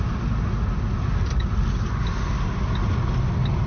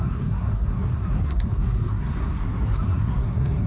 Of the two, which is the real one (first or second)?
first